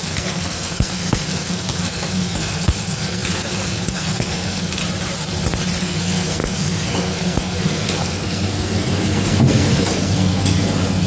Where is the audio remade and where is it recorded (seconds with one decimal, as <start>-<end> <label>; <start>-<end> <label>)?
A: 0.0-4.8 remade; 4.8-5.8 recorded; 5.8-11.1 remade